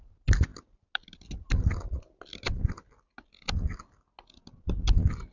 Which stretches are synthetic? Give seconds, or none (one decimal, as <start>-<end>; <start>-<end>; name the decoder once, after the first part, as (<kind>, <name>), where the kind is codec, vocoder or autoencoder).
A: none